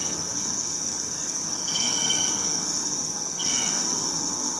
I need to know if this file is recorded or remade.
remade